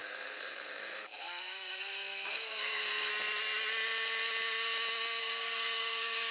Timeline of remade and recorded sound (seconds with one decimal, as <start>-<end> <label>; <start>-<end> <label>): 0.0-3.1 remade; 3.1-5.2 recorded; 5.2-6.3 remade

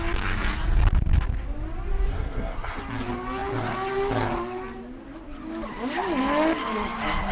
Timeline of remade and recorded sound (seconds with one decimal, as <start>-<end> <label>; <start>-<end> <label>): 0.0-2.1 recorded; 2.1-2.8 remade; 2.8-7.3 recorded

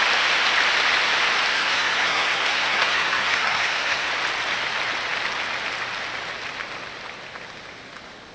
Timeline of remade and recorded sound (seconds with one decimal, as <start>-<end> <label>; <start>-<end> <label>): 0.0-1.5 recorded; 1.5-4.1 remade; 4.1-8.3 recorded

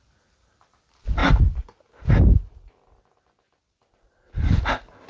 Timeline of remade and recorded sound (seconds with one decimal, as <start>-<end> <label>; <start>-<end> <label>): 0.0-5.1 recorded

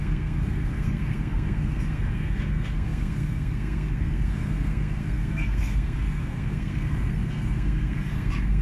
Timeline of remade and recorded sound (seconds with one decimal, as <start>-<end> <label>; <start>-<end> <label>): 0.0-8.6 remade

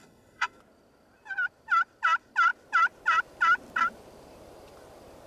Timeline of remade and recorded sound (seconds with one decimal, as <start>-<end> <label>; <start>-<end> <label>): 0.0-0.6 remade; 0.6-5.3 recorded

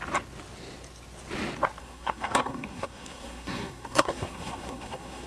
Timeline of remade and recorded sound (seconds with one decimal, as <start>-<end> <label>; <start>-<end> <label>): 0.0-1.8 recorded; 1.8-5.3 remade

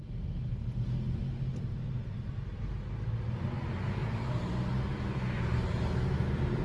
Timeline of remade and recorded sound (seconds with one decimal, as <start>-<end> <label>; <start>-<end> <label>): 0.0-6.6 recorded